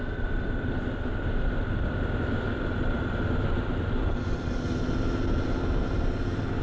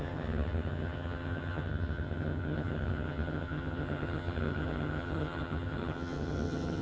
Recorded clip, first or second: first